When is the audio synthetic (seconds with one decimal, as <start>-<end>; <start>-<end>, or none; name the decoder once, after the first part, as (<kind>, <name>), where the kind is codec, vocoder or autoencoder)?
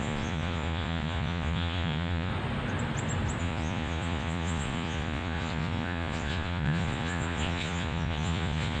0.0-2.3 (vocoder, Vocos); 3.4-8.8